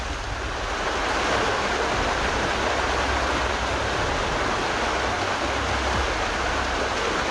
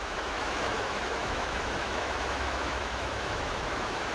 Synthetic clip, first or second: second